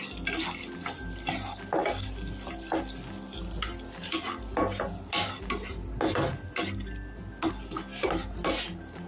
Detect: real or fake real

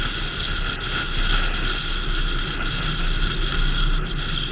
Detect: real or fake real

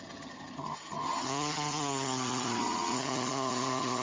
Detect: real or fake fake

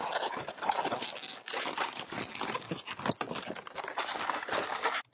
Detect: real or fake real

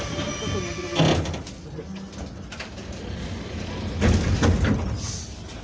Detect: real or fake real